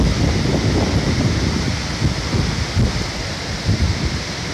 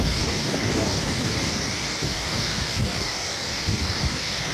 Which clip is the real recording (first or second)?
first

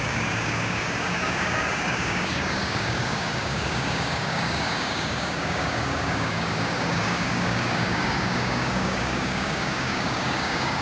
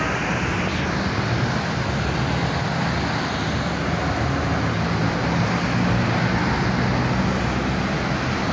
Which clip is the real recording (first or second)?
second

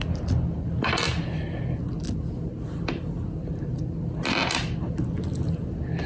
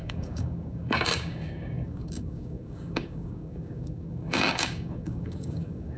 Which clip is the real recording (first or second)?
first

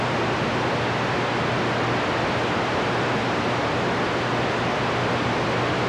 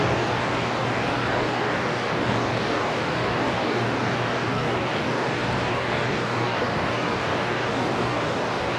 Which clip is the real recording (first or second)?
first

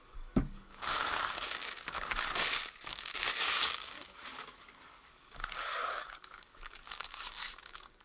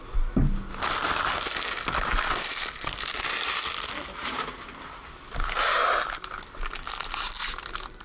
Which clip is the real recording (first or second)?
second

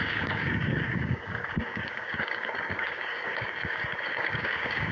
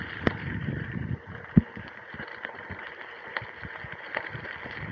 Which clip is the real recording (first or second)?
second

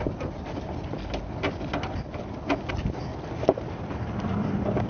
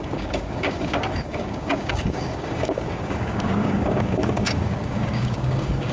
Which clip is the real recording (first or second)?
first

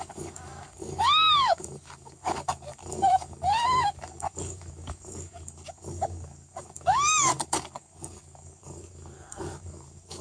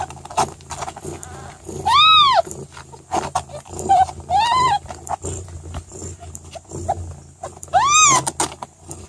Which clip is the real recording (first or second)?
second